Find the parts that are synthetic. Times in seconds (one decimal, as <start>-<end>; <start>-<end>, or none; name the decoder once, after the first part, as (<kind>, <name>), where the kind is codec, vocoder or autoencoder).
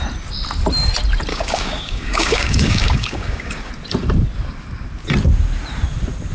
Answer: 1.3-3.7 (codec, DAC)